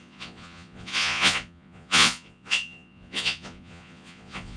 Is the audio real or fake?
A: fake